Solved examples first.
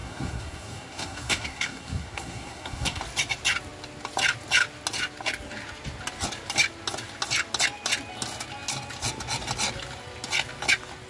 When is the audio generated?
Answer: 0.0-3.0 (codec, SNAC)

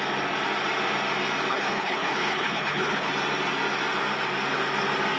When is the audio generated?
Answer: 1.5-3.1 (codec, HILCodec)

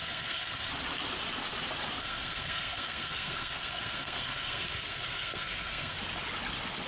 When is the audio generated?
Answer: 0.0-0.7 (codec, SNAC); 2.0-6.0

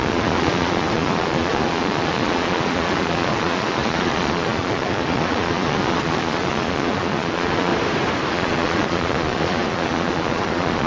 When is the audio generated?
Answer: 0.0-7.7 (vocoder, Vocos); 8.3-10.9

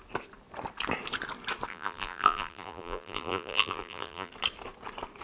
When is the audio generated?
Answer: 1.7-4.3 (vocoder, BigVGAN v2)